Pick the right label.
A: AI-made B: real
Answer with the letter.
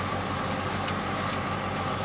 B